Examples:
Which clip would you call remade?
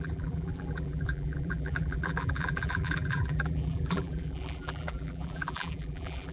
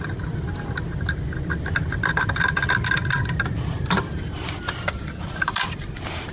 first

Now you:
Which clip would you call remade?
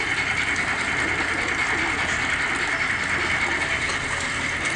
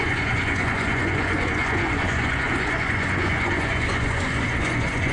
second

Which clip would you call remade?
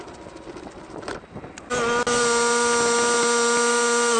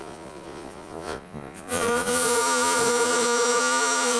second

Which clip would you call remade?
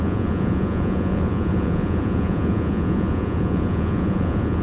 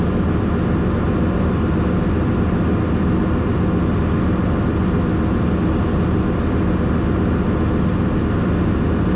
first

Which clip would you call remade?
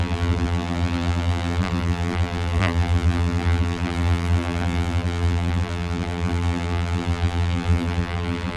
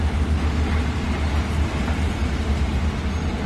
first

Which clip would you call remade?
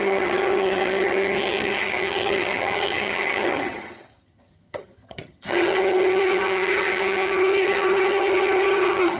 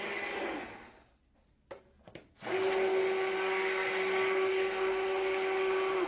first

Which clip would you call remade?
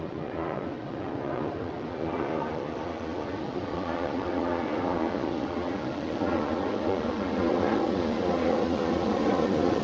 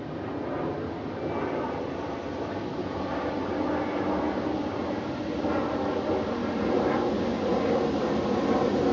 first